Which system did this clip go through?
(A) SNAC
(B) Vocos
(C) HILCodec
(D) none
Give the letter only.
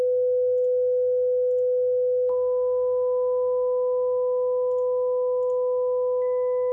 D